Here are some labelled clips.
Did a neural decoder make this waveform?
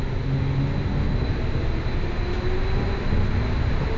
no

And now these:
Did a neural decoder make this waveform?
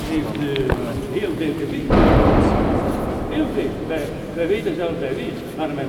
no